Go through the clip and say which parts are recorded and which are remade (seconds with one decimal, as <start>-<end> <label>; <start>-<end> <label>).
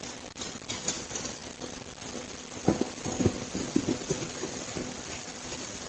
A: 0.0-5.9 recorded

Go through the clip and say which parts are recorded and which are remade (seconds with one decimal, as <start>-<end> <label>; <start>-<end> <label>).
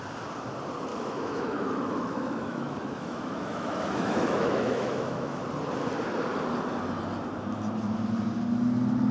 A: 0.0-0.9 recorded; 0.9-5.4 remade; 5.4-9.1 recorded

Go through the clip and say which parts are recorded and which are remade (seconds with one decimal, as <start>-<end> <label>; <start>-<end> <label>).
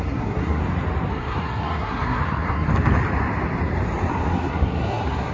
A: 0.0-0.6 remade; 0.6-1.1 recorded; 1.1-2.7 remade; 2.7-4.1 recorded; 4.1-5.3 remade